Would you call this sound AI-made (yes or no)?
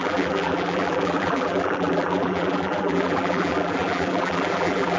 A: yes